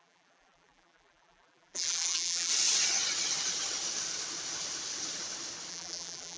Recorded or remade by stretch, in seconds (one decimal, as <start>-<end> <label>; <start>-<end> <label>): 0.0-2.5 remade; 2.5-5.7 recorded; 5.7-6.4 remade